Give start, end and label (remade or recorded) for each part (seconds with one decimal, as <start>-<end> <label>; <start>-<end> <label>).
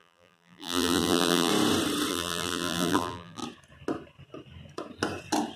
0.0-1.5 remade; 1.5-2.1 recorded; 2.1-3.4 remade; 3.4-5.6 recorded